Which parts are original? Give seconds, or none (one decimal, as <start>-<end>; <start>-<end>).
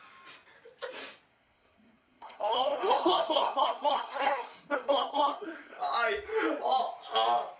0.0-1.3; 5.8-7.6